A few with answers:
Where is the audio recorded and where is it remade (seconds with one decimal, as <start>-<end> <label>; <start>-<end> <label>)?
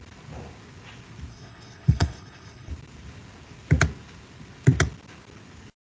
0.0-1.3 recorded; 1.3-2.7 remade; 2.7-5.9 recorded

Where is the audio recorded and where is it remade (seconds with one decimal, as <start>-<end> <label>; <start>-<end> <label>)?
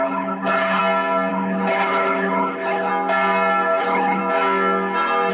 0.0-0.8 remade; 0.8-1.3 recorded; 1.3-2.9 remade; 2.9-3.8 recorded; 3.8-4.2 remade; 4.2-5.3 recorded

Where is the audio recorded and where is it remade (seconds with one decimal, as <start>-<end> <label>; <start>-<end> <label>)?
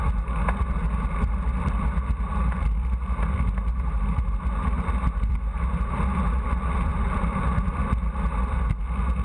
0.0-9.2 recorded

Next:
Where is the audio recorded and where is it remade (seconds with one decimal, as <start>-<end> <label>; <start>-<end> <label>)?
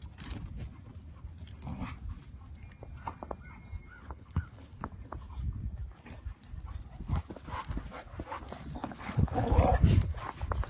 0.0-3.9 recorded; 3.9-4.9 remade; 4.9-8.8 recorded; 8.8-9.6 remade; 9.6-10.7 recorded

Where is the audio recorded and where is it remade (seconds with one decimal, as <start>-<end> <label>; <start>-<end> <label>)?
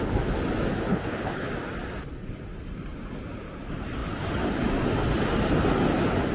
0.0-0.9 recorded; 0.9-1.5 remade; 1.5-6.3 recorded